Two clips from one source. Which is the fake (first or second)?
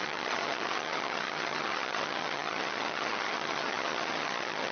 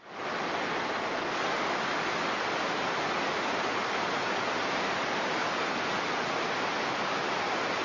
first